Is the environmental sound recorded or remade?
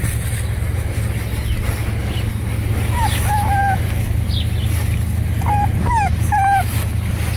recorded